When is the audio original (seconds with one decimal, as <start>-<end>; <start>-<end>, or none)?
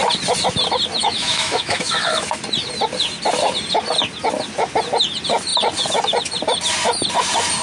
0.0-1.0; 2.4-7.6